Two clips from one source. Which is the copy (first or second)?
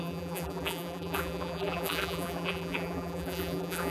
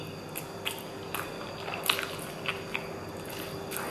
first